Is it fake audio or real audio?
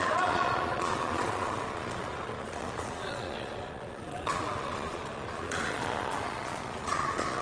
fake